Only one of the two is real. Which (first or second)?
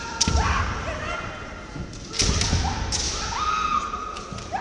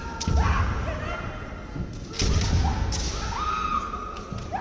second